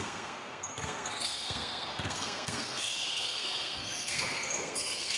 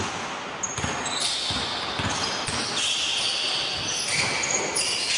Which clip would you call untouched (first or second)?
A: second